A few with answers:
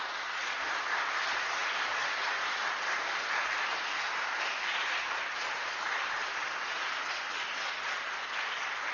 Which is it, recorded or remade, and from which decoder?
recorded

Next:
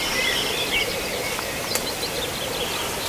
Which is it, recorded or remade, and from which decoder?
recorded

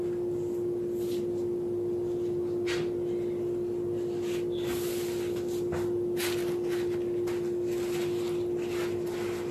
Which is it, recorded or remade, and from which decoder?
recorded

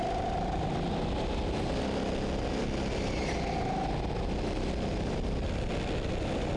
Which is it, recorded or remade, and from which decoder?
recorded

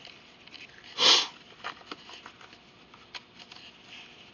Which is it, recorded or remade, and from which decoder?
recorded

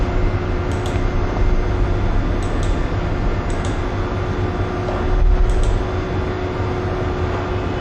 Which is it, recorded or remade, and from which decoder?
recorded